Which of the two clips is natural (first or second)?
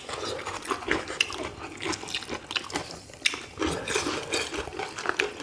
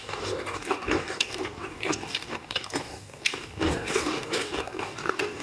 first